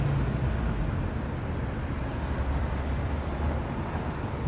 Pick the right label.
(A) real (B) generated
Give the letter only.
A